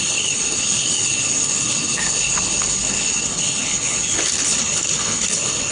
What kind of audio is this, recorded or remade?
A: remade